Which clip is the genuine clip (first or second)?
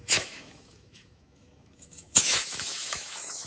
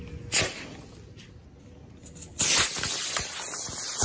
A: second